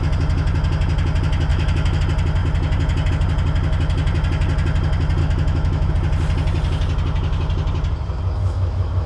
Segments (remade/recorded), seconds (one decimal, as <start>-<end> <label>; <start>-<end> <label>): 0.0-1.5 recorded; 1.5-2.0 remade; 2.0-5.2 recorded; 5.2-5.9 remade; 5.9-8.4 recorded; 8.4-9.1 remade